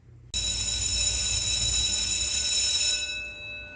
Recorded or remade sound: recorded